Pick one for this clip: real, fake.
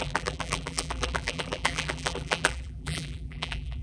fake